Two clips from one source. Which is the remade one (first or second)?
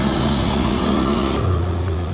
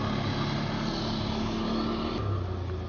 first